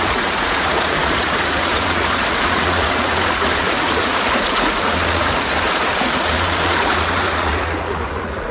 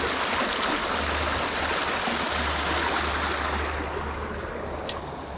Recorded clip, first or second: second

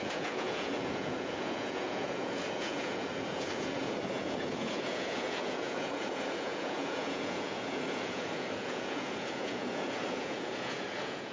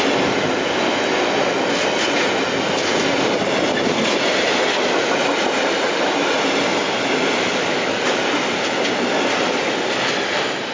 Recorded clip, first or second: second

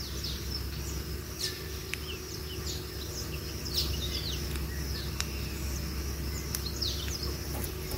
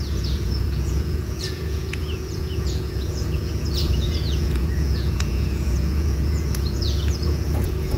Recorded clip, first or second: first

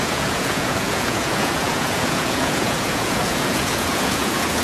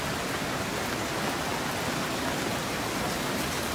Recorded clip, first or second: second